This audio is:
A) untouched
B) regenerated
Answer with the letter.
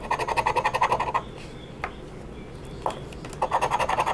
A